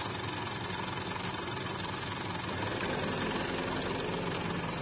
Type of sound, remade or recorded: recorded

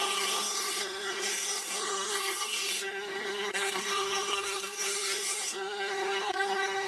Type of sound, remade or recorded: remade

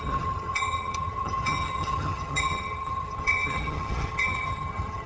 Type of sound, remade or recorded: remade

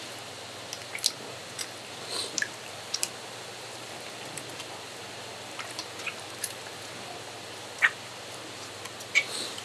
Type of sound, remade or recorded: recorded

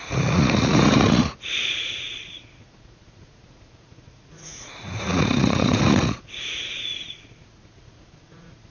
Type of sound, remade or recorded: remade